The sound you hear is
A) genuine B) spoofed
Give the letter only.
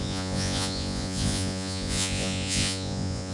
B